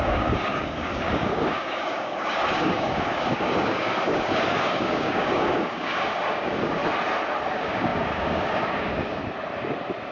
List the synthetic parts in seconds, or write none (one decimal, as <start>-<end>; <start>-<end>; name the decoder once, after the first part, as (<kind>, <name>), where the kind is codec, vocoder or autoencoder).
0.0-6.8 (codec, DAC); 7.5-9.2